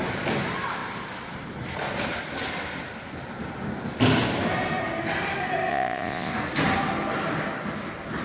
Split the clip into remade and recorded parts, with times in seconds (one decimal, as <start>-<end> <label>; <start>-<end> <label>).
0.0-5.7 recorded; 5.7-6.3 remade; 6.3-8.2 recorded